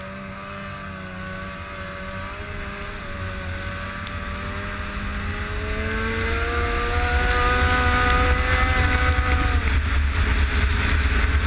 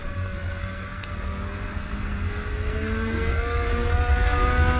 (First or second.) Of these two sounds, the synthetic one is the second